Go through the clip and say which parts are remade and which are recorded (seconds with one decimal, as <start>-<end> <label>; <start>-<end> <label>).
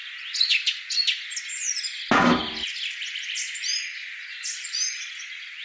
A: 0.0-5.6 recorded